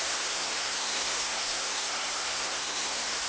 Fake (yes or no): yes